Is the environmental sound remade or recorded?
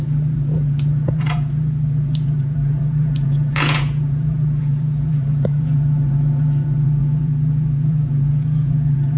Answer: remade